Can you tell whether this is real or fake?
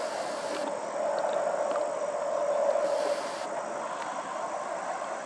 real